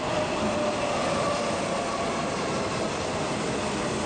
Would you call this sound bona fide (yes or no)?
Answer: yes